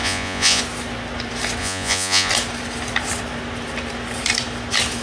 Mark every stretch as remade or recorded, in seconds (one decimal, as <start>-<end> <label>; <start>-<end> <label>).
0.0-0.6 remade; 0.6-1.6 recorded; 1.6-2.3 remade; 2.3-5.0 recorded